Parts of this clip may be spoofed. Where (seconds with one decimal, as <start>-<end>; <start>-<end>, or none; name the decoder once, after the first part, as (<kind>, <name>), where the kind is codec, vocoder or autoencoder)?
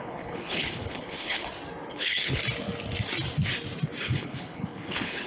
0.0-1.4 (codec, HILCodec); 1.9-2.4; 4.0-5.3